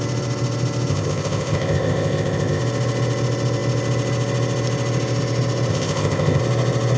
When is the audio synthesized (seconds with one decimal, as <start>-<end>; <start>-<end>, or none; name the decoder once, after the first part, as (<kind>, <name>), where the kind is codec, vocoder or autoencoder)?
0.9-2.6 (codec, ZipCodec); 5.7-6.4

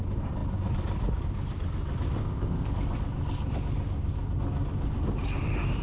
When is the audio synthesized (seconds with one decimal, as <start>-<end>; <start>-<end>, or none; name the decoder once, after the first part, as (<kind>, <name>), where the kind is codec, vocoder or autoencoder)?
2.2-2.7 (codec, ZipCodec)

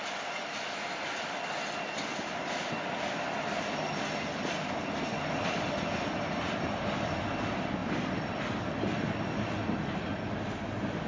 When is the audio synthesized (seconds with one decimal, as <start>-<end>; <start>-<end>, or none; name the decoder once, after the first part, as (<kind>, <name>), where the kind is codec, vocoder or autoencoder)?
none

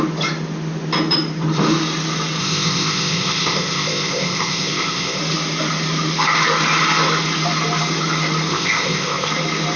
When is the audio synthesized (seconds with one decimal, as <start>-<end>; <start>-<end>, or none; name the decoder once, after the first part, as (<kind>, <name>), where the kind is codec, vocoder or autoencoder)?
2.4-5.2 (codec, ZipCodec); 8.5-9.3

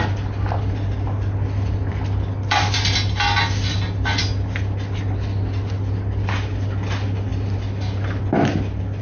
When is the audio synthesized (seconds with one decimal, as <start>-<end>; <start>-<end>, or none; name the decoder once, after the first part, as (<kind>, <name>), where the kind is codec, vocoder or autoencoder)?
none